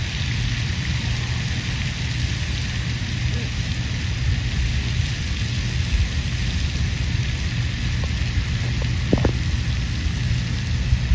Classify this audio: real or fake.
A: real